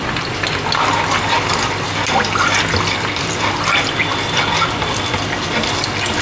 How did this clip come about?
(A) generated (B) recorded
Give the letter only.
B